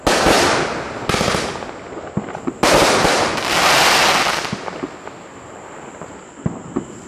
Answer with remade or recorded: recorded